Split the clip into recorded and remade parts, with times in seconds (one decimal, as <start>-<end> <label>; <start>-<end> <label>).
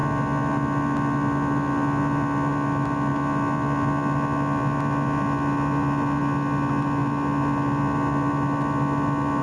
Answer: 0.0-9.4 recorded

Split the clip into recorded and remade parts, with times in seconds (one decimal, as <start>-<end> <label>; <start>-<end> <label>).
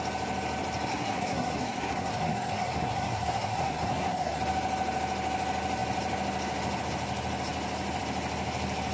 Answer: 0.0-0.9 recorded; 0.9-4.4 remade; 4.4-8.9 recorded